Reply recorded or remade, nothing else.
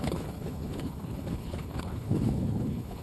remade